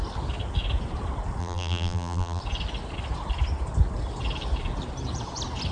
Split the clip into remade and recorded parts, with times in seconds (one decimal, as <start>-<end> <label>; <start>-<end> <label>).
0.0-1.4 recorded; 1.4-2.4 remade; 2.4-5.7 recorded